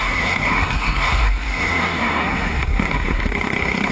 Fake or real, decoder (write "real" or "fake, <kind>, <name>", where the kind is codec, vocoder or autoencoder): fake, codec, SNAC